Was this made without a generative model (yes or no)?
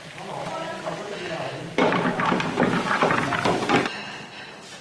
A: yes